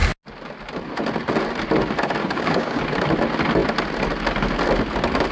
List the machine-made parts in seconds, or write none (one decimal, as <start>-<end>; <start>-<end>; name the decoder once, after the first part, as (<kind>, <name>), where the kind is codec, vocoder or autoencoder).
2.2-2.8 (codec, DAC)